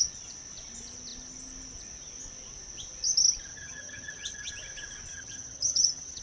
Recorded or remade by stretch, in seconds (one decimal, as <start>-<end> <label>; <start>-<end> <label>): 0.0-3.5 recorded; 3.5-4.5 remade; 4.5-5.1 recorded; 5.1-6.2 remade